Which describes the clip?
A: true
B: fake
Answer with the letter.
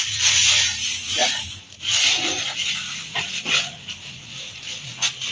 B